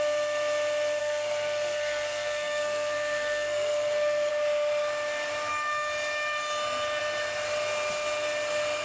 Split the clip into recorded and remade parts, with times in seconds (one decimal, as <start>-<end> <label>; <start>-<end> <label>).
0.0-1.0 recorded; 1.0-4.3 remade; 4.3-8.8 recorded

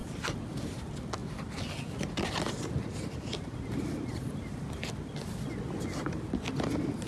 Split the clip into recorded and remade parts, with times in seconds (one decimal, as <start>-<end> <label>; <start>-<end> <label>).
0.0-1.2 recorded; 1.2-4.9 remade; 4.9-7.1 recorded

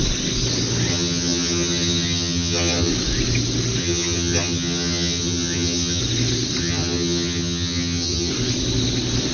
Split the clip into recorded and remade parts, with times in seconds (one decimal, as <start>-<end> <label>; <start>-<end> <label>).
0.0-0.9 recorded; 0.9-2.9 remade; 2.9-3.8 recorded; 3.8-6.0 remade; 6.0-6.6 recorded; 6.6-8.3 remade; 8.3-9.3 recorded

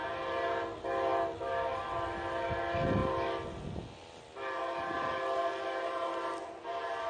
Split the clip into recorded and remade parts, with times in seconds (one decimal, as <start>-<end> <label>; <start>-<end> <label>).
0.0-7.1 recorded

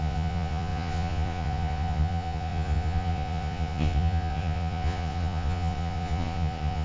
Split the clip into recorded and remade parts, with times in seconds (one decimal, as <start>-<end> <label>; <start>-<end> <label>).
0.0-6.8 remade

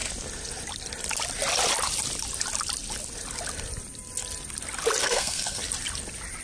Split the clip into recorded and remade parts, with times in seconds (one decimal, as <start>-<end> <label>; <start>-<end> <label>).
0.0-5.0 recorded; 5.0-5.6 remade; 5.6-6.4 recorded

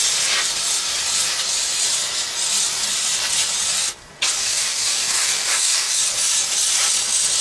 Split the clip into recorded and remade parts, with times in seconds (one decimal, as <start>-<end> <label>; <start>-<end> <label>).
0.0-4.4 recorded; 4.4-6.0 remade; 6.0-7.4 recorded

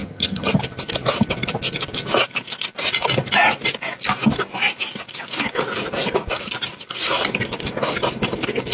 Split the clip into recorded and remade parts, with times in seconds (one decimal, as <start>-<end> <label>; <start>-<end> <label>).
0.0-0.6 remade; 0.6-8.7 recorded